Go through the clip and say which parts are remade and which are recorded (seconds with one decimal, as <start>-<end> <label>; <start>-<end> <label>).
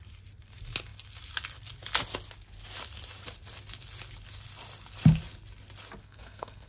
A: 0.0-6.0 recorded; 6.0-6.7 remade